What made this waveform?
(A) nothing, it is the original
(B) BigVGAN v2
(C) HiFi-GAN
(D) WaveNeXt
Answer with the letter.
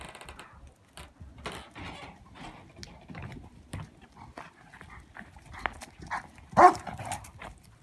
A